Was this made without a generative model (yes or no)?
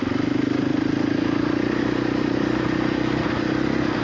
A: yes